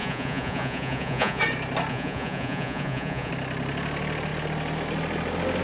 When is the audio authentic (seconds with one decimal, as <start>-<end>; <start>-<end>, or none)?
1.4-1.9; 3.3-5.6